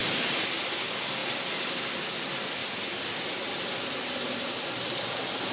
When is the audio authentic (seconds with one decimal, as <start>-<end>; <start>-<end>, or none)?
0.0-5.5